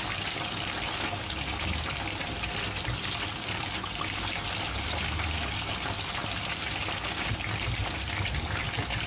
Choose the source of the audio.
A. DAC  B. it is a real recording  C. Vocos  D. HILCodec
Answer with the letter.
B